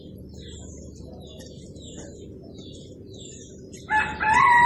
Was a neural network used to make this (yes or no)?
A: no